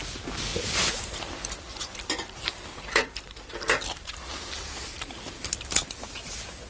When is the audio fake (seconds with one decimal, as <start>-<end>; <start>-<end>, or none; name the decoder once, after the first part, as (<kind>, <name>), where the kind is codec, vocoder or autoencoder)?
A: 0.5-4.1 (vocoder, BigVGAN v2)